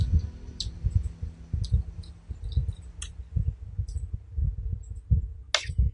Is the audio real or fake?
real